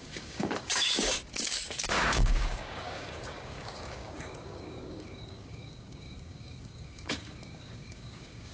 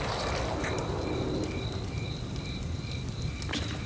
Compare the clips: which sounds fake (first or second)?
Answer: first